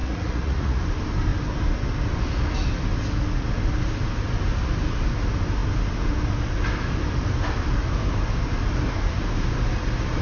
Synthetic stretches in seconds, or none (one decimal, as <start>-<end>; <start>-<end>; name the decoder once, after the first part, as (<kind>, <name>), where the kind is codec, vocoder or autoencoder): 0.0-0.8 (vocoder, Vocos)